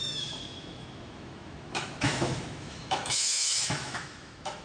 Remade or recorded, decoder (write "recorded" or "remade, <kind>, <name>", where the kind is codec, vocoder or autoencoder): remade, autoencoder, DAC-VAE